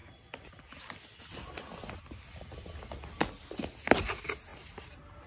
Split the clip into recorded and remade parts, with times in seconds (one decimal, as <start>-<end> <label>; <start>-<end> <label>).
0.0-5.3 recorded